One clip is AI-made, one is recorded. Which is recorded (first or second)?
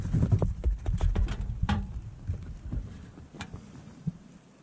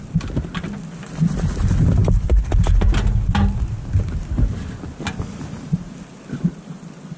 second